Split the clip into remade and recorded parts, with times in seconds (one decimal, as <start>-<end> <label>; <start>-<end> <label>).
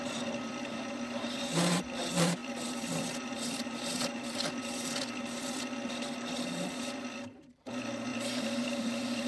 0.0-9.3 remade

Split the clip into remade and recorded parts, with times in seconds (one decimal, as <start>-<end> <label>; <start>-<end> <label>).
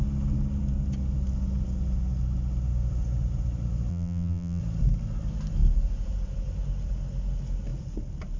0.0-3.9 recorded; 3.9-4.6 remade; 4.6-8.4 recorded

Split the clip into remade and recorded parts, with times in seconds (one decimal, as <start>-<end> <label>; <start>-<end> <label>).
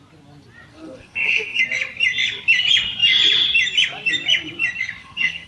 0.0-0.7 recorded; 0.7-1.6 remade; 1.6-5.0 recorded; 5.0-5.5 remade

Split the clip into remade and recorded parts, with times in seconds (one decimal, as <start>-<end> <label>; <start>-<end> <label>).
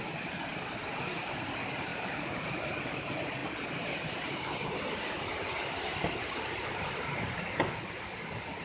0.0-1.9 recorded; 1.9-2.7 remade; 2.7-3.4 recorded; 3.4-4.8 remade; 4.8-8.6 recorded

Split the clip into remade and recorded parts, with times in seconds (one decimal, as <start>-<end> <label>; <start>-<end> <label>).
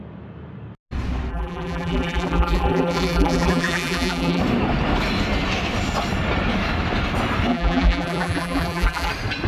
0.0-1.3 recorded; 1.3-4.4 remade; 4.4-7.5 recorded; 7.5-9.1 remade; 9.1-9.5 recorded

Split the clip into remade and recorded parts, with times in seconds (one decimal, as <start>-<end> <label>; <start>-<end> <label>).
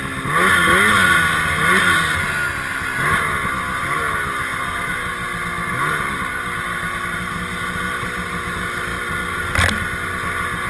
0.0-10.7 recorded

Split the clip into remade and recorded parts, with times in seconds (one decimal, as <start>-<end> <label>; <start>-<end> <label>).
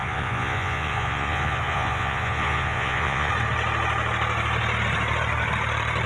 0.0-3.3 remade; 3.3-6.1 recorded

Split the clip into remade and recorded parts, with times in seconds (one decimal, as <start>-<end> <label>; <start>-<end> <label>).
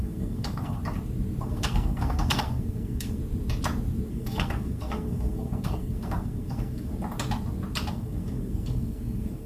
0.0-0.8 remade; 0.8-1.4 recorded; 1.4-3.2 remade; 3.2-4.1 recorded; 4.1-6.9 remade; 6.9-7.9 recorded; 7.9-9.5 remade